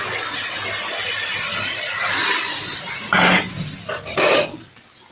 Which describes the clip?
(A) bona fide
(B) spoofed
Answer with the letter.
A